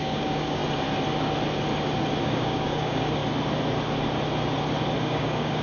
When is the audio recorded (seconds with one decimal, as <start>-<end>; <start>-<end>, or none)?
0.6-2.2; 3.2-5.0